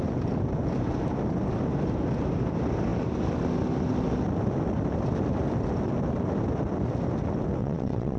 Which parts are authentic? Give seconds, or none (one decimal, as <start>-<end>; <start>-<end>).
0.0-7.6